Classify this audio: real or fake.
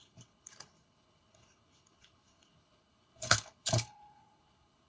fake